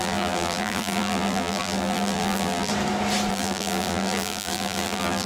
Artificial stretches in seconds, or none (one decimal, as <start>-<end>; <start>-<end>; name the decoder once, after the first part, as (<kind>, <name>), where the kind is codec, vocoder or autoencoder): 0.0-2.7 (vocoder, BigVGAN v2); 3.3-5.3